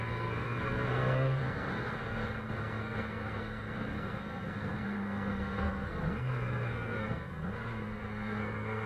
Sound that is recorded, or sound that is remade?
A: remade